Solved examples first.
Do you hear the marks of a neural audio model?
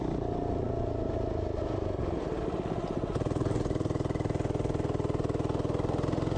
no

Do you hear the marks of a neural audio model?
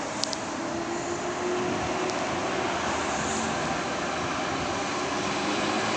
no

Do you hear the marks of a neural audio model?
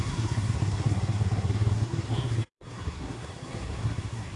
yes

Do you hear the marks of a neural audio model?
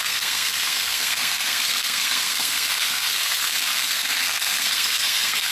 yes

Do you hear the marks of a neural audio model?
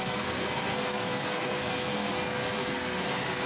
yes